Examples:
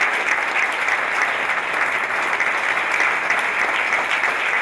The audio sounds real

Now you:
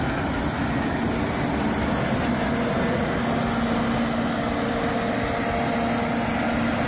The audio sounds real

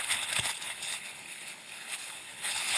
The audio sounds fake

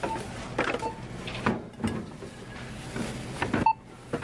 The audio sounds real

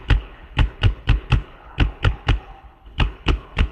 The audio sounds fake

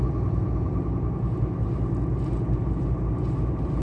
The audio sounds real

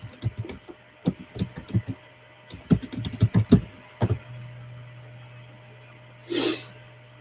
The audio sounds real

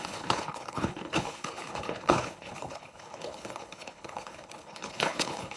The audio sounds fake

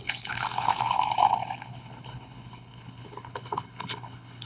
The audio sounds fake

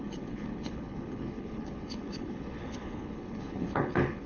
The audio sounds fake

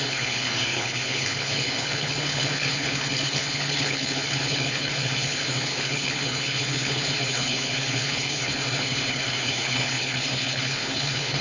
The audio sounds fake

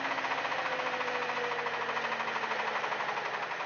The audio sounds real